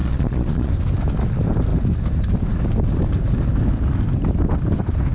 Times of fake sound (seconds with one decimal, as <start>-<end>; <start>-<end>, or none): 0.0-0.7